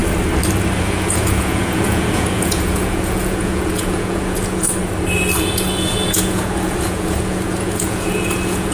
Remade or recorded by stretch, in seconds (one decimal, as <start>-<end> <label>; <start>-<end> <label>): 0.0-0.8 recorded; 0.8-4.8 remade; 4.8-5.4 recorded; 5.4-8.7 remade